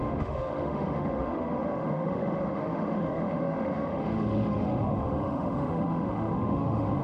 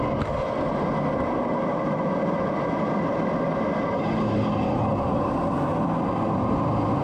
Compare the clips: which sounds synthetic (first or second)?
first